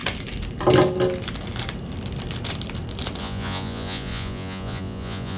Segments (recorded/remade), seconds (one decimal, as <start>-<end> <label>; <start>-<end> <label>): 0.0-3.2 recorded; 3.2-5.4 remade